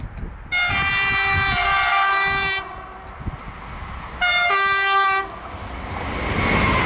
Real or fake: real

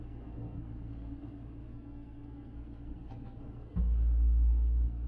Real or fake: fake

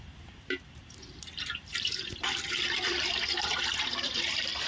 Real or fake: fake